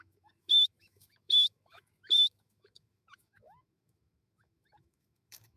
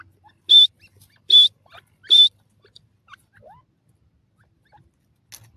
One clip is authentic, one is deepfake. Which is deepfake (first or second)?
first